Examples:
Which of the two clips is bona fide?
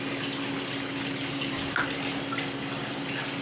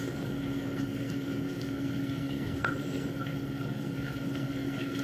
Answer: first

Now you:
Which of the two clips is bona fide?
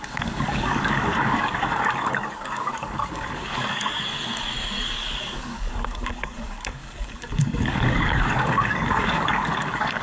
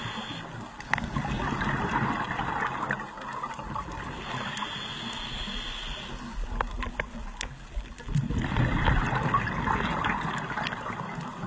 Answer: second